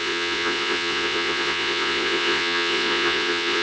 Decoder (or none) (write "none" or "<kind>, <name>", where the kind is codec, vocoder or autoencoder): vocoder, Vocos